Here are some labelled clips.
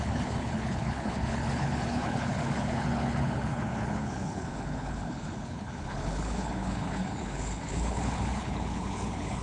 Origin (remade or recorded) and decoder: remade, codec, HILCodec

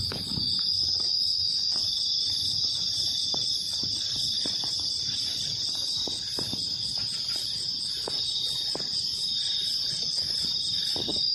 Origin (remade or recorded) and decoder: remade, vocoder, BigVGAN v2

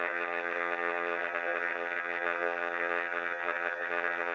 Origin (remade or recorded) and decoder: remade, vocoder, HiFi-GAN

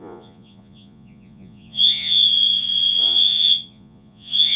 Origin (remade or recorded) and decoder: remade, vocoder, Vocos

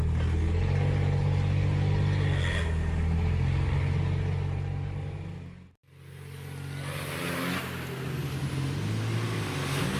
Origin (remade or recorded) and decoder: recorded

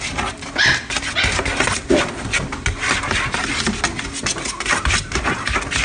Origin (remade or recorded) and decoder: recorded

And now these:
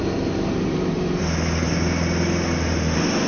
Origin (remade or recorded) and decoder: recorded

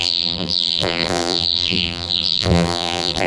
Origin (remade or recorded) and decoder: remade, vocoder, BigVGAN v2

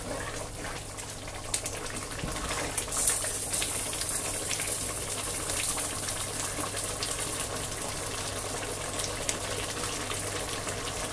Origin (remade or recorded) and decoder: recorded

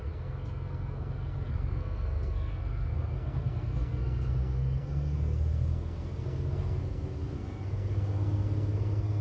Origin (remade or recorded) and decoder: remade, codec, SNAC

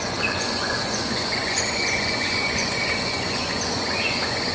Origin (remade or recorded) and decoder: remade, vocoder, Vocos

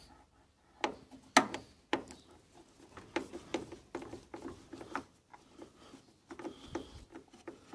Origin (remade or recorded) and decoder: recorded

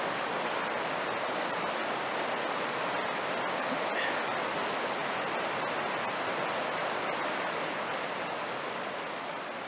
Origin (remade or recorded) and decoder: recorded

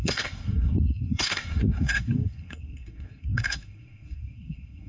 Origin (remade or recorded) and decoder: remade, codec, SNAC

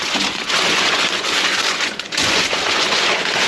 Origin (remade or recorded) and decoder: remade, vocoder, Vocos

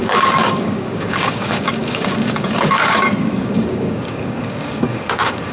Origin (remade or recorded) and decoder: remade, codec, DAC